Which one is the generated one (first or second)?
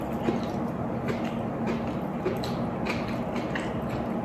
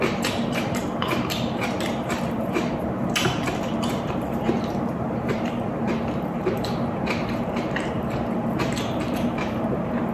second